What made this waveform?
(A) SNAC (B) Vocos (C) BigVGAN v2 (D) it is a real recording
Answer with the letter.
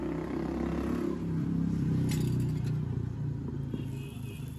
D